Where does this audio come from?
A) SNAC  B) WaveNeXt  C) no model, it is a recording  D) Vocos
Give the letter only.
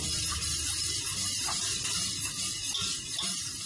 C